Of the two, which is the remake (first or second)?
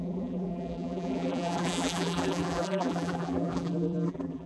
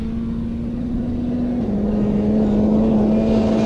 first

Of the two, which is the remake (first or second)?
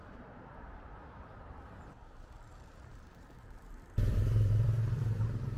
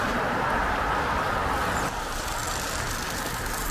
first